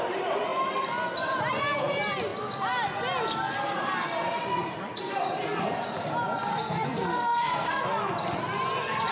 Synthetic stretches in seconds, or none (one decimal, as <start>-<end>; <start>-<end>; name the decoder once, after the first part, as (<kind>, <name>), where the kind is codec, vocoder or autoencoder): 6.5-7.8 (codec, SNAC)